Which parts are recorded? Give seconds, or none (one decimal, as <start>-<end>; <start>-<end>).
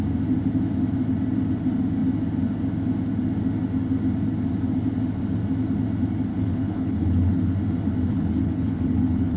0.0-6.3; 7.4-8.1